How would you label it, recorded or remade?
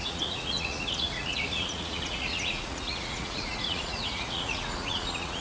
remade